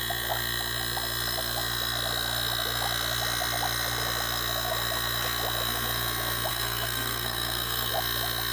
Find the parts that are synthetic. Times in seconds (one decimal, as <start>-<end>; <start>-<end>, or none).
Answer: 6.5-7.9